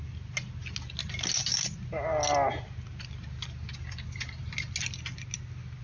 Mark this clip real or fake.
real